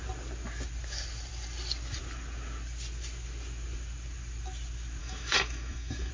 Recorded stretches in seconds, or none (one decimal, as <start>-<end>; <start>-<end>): 0.0-5.0